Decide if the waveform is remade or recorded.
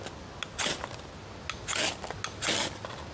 recorded